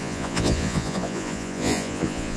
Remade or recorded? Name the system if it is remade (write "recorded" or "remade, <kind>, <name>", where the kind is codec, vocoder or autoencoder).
remade, vocoder, Vocos